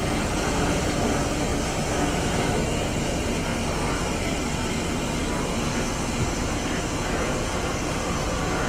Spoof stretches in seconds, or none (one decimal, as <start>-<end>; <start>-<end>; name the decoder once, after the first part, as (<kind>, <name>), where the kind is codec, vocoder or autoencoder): 0.0-1.5 (vocoder, Vocos); 2.8-3.5; 6.4-8.7